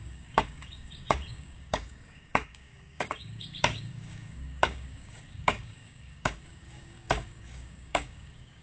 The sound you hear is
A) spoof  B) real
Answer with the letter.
A